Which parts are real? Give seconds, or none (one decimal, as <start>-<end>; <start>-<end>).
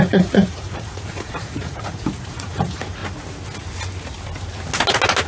3.0-5.3